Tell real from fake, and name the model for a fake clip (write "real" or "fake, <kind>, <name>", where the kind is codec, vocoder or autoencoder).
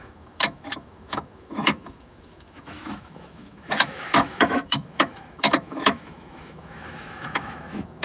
fake, autoencoder, DAC-VAE